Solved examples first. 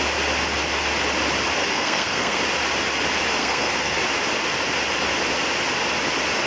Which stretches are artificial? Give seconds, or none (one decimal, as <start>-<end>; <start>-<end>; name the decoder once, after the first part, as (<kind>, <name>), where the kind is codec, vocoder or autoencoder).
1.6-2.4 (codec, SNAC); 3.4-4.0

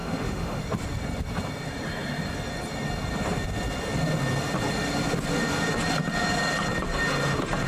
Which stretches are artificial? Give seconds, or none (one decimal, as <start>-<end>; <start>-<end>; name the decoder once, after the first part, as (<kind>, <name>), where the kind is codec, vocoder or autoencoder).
0.0-0.6 (autoencoder, DAC-VAE)

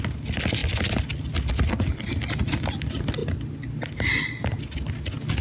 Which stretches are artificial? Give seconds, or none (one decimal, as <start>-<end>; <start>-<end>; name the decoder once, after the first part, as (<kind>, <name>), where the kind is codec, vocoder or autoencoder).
none

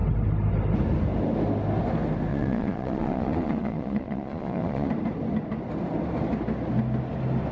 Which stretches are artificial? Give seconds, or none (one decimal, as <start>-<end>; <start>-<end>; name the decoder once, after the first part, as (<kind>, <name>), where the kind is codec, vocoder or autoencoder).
2.3-4.9 (vocoder, Vocos)

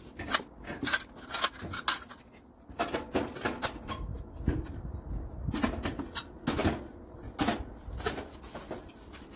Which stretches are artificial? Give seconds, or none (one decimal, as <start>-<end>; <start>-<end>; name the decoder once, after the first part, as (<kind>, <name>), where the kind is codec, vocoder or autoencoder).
none